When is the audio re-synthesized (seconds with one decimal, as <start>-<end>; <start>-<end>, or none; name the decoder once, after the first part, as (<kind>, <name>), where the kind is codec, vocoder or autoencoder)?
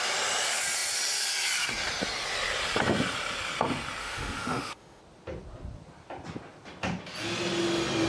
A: 4.0-5.0 (autoencoder, DAC-VAE)